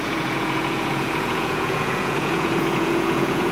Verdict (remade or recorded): remade